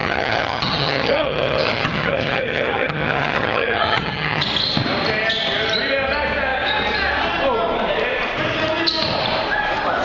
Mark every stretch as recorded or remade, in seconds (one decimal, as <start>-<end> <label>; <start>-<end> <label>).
0.0-4.4 remade; 4.4-10.0 recorded